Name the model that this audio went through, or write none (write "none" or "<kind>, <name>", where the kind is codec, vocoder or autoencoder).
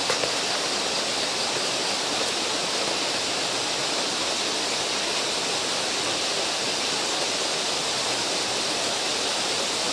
none